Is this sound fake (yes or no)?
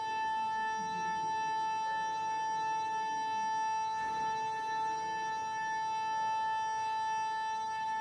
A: no